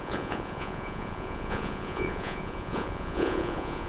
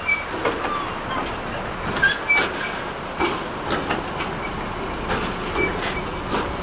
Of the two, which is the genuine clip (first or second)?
second